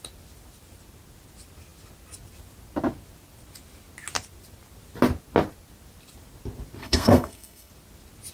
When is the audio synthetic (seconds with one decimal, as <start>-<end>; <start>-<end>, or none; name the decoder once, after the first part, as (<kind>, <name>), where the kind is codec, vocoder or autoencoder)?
6.8-7.7 (codec, SNAC)